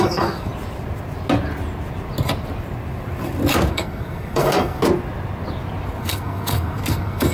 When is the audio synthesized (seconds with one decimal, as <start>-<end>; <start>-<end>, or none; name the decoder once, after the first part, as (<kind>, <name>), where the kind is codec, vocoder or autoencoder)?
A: 0.0-0.5 (codec, SNAC); 3.7-4.8; 6.0-7.3